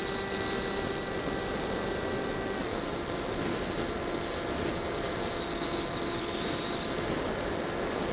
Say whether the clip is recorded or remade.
recorded